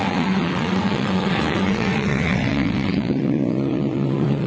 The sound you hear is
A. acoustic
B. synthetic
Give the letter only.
B